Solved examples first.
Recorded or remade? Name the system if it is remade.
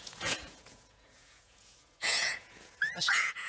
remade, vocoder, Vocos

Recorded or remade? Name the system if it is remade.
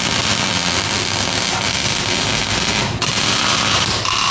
recorded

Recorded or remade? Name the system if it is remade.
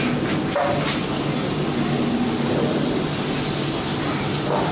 recorded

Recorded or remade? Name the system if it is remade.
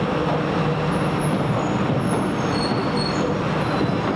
recorded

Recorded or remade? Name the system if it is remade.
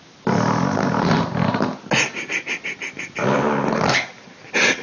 recorded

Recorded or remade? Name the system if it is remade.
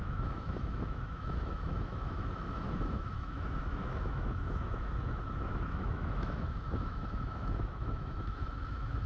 remade, autoencoder, DAC-VAE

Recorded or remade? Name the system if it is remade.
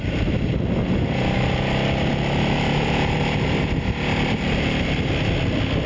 recorded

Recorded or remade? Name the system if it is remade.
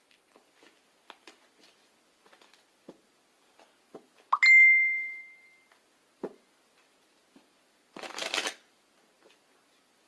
recorded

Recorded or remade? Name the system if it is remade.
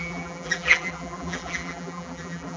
remade, vocoder, BigVGAN v2